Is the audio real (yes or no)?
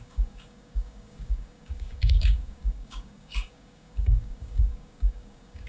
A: no